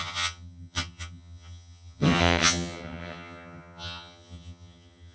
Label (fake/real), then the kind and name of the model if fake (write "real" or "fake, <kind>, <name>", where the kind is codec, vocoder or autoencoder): fake, vocoder, HiFi-GAN